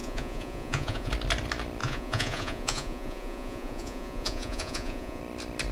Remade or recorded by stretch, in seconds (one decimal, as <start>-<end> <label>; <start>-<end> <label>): 0.0-1.1 remade; 1.1-1.8 recorded; 1.8-5.2 remade; 5.2-5.7 recorded